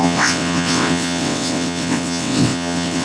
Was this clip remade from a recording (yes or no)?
yes